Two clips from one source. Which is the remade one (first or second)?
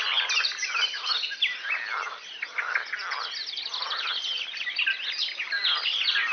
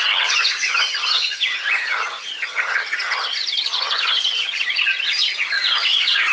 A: second